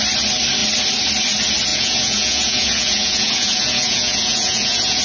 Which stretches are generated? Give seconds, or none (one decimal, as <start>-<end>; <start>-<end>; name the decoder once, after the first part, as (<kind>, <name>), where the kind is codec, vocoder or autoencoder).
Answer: 1.7-5.0 (vocoder, Vocos)